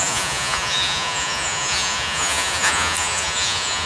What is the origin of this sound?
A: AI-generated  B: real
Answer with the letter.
A